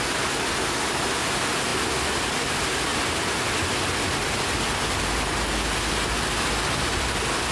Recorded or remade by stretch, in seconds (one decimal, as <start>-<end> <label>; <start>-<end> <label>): 0.0-7.5 recorded

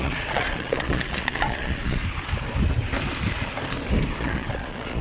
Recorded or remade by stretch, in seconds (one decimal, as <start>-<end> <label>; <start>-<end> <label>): 0.0-2.0 remade; 2.0-4.2 recorded; 4.2-5.0 remade

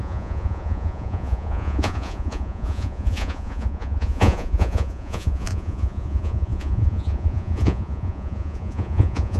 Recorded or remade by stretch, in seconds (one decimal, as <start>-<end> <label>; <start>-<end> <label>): 0.0-9.4 remade

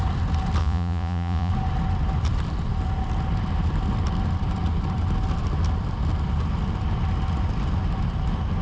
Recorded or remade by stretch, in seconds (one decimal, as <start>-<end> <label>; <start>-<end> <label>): 0.0-0.6 recorded; 0.6-1.5 remade; 1.5-8.6 recorded

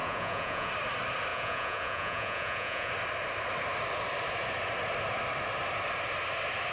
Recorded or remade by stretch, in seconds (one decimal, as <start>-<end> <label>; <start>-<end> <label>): 0.0-0.7 remade; 0.7-1.3 recorded; 1.3-2.9 remade; 2.9-6.7 recorded